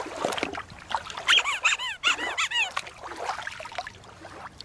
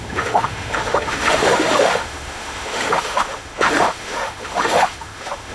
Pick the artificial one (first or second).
second